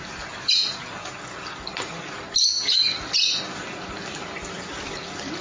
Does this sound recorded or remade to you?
recorded